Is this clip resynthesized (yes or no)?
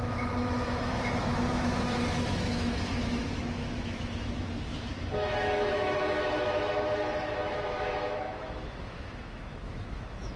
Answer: yes